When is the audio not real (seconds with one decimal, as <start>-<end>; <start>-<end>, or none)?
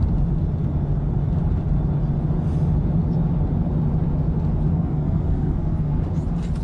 4.7-6.0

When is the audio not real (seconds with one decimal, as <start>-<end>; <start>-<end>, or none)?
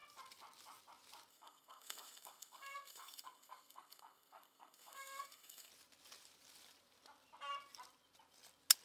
1.3-5.7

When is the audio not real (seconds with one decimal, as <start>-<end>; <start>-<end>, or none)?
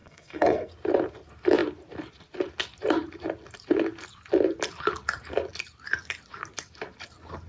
0.0-0.7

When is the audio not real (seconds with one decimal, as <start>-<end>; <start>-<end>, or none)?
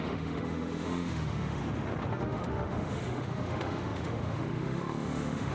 0.0-1.6; 2.1-5.5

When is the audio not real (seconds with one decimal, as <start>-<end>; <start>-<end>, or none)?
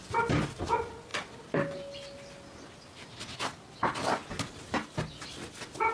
none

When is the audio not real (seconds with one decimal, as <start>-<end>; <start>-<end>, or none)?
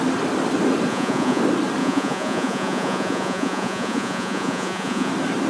0.9-1.4; 1.8-5.1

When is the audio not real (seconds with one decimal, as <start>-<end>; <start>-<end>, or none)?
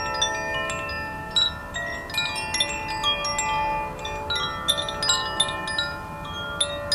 none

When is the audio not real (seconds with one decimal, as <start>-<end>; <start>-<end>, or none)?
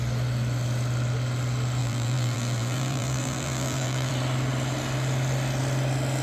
1.8-4.1